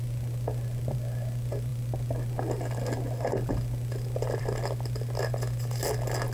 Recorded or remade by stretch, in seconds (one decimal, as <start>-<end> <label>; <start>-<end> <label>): 0.0-6.3 recorded